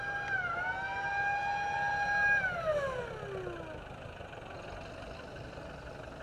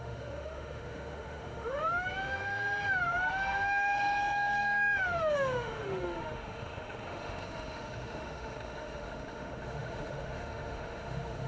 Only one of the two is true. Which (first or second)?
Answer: first